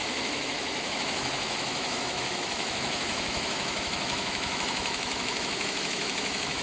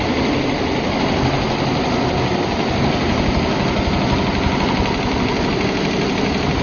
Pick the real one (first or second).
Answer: second